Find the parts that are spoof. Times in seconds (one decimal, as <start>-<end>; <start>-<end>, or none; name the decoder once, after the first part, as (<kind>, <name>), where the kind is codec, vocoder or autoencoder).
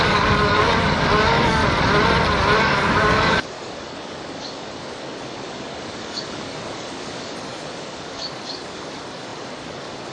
0.0-1.6 (codec, DAC); 2.6-10.1